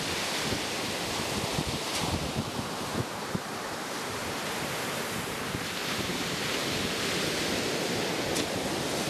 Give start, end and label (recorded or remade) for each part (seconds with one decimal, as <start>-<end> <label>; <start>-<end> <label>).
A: 0.0-1.8 recorded; 1.8-4.2 remade; 4.2-5.8 recorded; 5.8-6.7 remade; 6.7-9.1 recorded